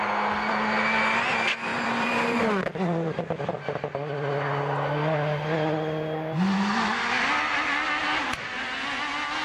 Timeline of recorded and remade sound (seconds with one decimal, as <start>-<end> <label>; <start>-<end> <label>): 0.0-1.7 recorded; 1.7-3.4 remade; 3.4-9.4 recorded